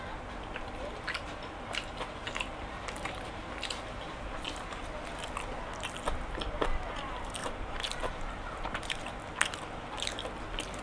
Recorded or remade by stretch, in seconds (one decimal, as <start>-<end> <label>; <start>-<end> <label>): 0.0-0.8 recorded; 0.8-3.4 remade; 3.4-4.1 recorded; 4.1-4.8 remade; 4.8-7.4 recorded; 7.4-9.0 remade; 9.0-10.8 recorded